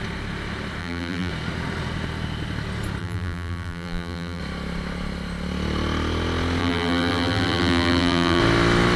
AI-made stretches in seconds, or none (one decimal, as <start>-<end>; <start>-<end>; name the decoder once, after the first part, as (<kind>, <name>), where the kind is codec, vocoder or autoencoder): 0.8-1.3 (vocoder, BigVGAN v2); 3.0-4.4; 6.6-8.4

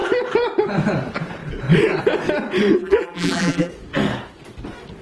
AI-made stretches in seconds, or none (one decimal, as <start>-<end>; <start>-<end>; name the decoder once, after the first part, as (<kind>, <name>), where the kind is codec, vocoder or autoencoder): 2.8-3.7 (vocoder, BigVGAN v2)

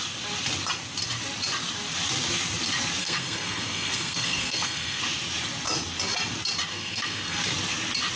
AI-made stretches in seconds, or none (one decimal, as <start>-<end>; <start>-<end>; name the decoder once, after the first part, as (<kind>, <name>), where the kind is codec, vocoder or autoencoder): 3.0-5.0 (codec, SNAC); 6.7-7.4